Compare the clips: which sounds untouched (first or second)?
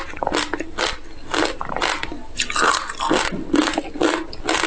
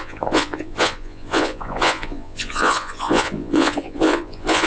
first